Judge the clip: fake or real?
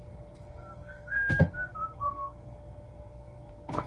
fake